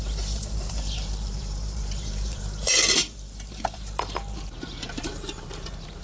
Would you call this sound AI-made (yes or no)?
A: yes